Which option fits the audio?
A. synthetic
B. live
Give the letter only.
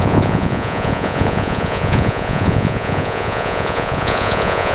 A